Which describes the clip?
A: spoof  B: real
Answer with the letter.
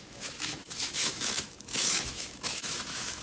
A